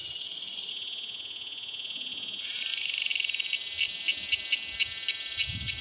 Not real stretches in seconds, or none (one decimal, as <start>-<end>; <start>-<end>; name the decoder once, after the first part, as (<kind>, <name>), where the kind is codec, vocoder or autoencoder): 0.0-0.7 (codec, DAC)